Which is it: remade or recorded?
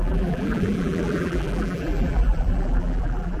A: remade